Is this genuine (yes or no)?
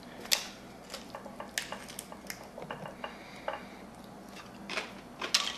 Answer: yes